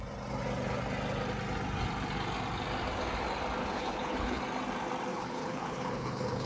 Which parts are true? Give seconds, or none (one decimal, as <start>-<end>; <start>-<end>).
0.0-3.6; 4.4-5.1